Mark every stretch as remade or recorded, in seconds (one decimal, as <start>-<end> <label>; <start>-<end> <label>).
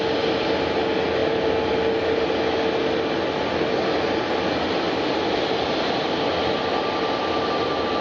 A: 0.0-8.0 recorded